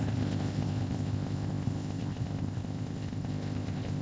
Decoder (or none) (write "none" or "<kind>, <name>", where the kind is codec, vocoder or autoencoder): codec, ZipCodec